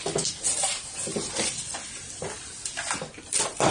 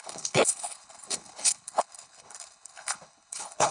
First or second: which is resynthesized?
second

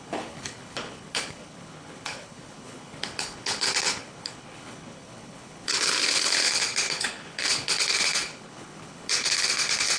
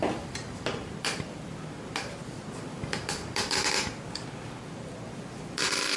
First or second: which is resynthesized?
first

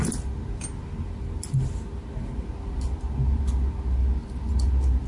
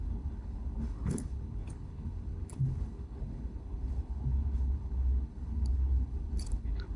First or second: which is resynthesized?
second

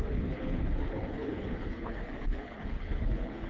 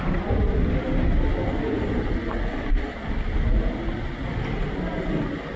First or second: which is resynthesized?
first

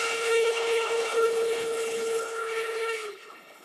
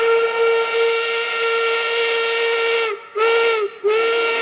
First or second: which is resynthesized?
first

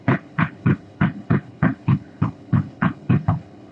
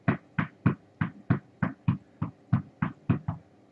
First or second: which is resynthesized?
first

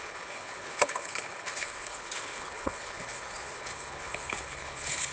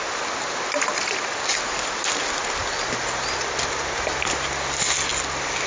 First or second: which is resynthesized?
first